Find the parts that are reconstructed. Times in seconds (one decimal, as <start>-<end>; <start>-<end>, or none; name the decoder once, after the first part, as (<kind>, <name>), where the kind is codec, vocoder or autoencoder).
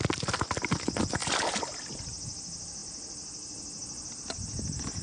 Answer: none